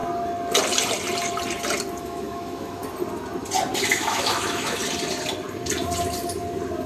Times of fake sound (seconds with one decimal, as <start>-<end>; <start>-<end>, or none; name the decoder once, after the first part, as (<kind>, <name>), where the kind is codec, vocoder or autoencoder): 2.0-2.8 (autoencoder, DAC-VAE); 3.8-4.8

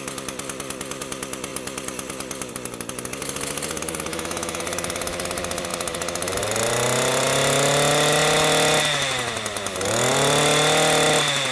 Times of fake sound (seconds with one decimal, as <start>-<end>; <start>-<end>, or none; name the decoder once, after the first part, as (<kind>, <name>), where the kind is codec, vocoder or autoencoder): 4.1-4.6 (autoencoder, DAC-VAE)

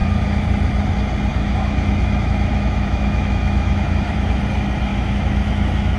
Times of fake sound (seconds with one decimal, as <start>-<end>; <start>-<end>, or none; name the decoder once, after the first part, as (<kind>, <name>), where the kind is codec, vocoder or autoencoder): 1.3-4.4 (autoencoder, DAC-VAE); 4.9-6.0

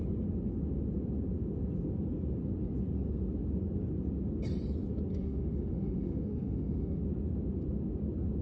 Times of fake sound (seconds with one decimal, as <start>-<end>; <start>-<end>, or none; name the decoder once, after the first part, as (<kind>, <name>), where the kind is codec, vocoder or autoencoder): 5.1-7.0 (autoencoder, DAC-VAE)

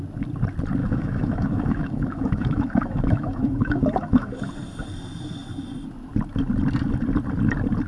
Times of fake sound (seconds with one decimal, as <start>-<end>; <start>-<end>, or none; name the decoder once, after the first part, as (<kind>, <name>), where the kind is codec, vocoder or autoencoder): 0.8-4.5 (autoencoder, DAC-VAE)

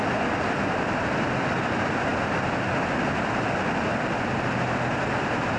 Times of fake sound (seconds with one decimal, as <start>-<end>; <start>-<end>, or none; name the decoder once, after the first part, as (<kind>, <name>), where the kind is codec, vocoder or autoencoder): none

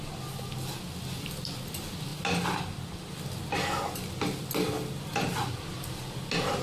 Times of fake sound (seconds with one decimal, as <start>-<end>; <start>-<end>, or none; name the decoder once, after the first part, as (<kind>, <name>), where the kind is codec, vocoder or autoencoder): none

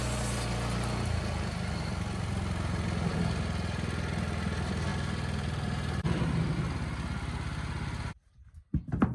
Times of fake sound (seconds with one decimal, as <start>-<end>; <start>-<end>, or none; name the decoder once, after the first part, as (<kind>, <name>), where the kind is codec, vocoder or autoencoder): none